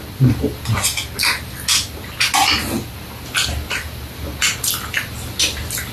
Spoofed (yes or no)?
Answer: no